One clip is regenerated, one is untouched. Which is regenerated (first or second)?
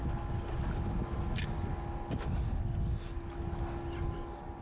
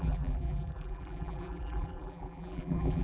second